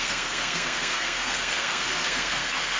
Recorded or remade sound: remade